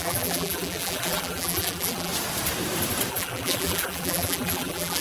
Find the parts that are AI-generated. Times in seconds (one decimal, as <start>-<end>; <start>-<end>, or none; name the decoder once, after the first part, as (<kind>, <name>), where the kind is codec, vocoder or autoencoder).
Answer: 0.0-2.1 (vocoder, BigVGAN v2); 3.1-5.0